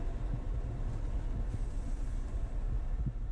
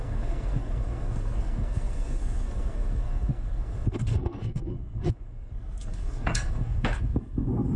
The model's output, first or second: second